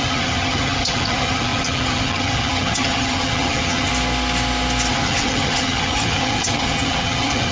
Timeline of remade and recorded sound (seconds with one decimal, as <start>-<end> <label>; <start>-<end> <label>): 0.0-3.9 remade; 3.9-4.9 recorded; 4.9-7.5 remade